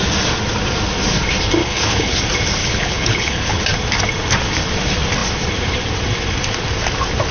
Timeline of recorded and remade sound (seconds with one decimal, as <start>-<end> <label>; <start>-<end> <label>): 0.0-1.6 recorded; 1.6-2.2 remade; 2.2-2.6 recorded; 2.6-3.6 remade; 3.6-7.3 recorded